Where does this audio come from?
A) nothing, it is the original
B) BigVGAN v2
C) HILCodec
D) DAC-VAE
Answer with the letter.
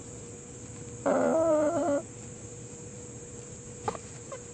B